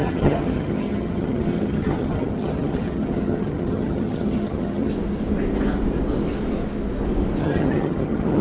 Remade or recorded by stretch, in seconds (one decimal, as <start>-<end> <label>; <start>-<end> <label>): 0.0-4.9 remade; 4.9-7.4 recorded; 7.4-8.4 remade